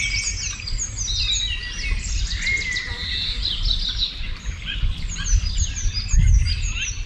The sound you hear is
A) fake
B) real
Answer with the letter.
B